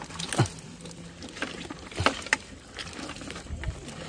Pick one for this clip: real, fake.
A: real